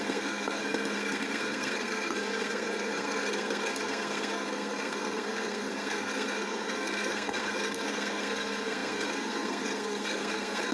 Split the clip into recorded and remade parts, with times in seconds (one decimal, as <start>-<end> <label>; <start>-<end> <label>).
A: 0.0-10.7 remade